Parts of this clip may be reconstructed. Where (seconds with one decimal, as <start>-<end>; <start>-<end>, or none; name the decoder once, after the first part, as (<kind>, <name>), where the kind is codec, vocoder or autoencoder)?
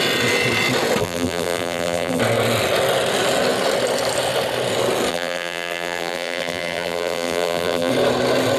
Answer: 1.0-2.2 (vocoder, BigVGAN v2); 5.1-7.9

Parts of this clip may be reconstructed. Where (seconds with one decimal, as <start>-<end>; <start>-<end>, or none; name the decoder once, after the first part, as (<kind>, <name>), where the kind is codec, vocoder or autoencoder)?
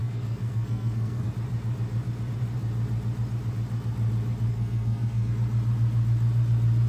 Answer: 0.0-1.3 (codec, SNAC); 4.5-5.3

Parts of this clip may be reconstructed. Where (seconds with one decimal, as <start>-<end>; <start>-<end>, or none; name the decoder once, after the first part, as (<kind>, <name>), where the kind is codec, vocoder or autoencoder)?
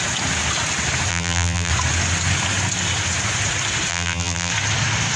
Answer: 1.1-1.7 (vocoder, BigVGAN v2); 3.9-4.5